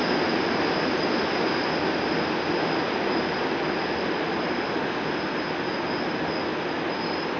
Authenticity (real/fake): real